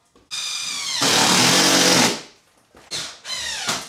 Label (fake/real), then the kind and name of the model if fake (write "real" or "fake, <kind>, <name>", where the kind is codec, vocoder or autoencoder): real